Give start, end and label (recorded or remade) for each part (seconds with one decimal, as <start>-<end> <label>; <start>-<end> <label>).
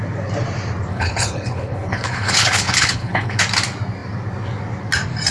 0.0-0.9 recorded; 0.9-3.4 remade; 3.4-5.3 recorded